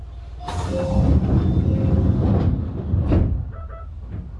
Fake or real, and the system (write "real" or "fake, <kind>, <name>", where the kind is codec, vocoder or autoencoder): real